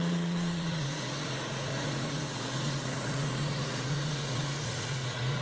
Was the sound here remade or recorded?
remade